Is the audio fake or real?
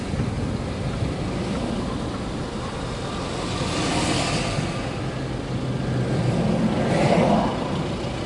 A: real